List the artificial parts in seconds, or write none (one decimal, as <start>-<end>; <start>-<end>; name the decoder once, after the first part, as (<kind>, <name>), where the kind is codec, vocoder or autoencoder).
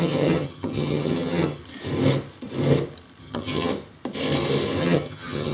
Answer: 0.0-1.6 (vocoder, HiFi-GAN); 3.2-3.7; 4.8-5.5